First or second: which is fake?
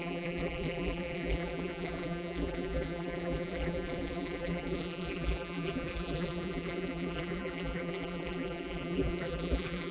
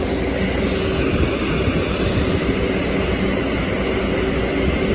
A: first